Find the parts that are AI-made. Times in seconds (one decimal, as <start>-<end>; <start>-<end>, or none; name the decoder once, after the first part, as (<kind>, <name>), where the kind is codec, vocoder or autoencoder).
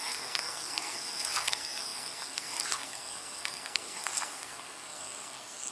0.0-5.7 (codec, SNAC)